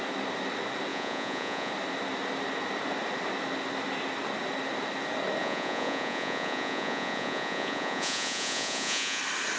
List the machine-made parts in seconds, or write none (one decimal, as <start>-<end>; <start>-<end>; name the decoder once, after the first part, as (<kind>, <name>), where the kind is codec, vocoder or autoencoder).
0.9-1.7 (vocoder, Vocos); 5.4-9.2